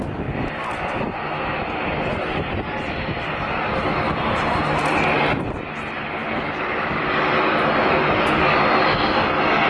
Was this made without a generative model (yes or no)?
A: yes